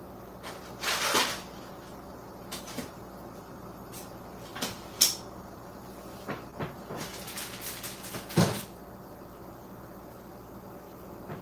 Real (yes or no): yes